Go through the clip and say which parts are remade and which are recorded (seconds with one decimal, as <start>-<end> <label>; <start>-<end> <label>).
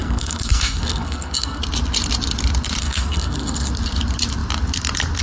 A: 0.0-1.6 remade; 1.6-2.8 recorded; 2.8-3.7 remade; 3.7-5.2 recorded